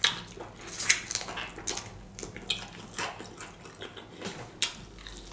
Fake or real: real